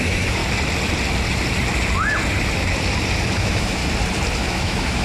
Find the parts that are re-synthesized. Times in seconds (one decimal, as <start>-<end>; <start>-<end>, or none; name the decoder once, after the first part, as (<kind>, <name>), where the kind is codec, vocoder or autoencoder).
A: 0.0-0.4 (autoencoder, DAC-VAE); 3.4-3.8; 4.4-5.0